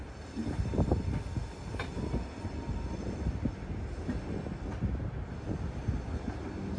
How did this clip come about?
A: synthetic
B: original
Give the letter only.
B